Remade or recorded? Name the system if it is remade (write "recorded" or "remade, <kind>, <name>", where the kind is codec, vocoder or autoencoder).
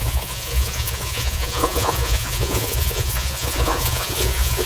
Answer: remade, vocoder, Vocos